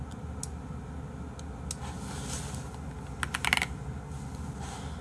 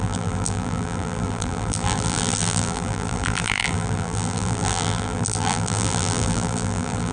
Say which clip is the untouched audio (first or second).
first